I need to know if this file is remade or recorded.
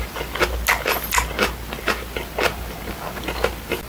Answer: recorded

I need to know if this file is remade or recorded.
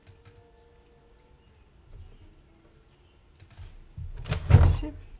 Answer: recorded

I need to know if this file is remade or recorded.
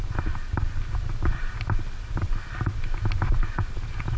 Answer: recorded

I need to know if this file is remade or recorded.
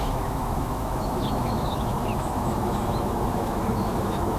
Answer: remade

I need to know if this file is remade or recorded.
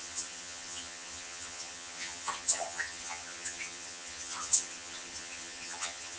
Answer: remade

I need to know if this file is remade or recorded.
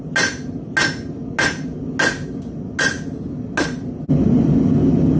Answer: recorded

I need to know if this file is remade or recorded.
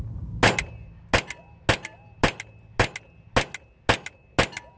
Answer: recorded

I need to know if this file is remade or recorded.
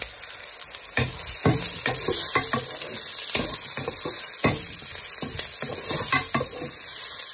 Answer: recorded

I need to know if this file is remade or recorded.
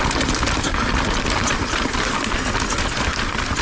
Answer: recorded